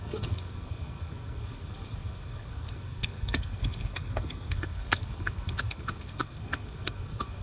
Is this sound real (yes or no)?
no